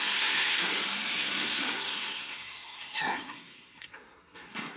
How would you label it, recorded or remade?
remade